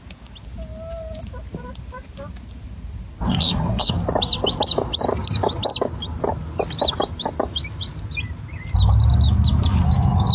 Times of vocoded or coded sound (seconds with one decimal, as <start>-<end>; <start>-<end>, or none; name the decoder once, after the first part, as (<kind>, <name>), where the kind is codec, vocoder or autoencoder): 3.3-3.9 (codec, SNAC)